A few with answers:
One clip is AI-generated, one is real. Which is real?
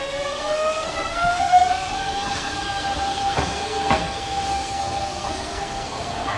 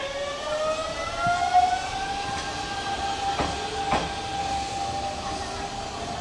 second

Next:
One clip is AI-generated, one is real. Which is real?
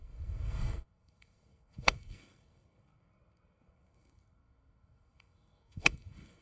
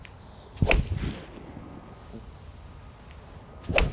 second